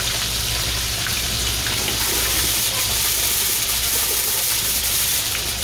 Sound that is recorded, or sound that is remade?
remade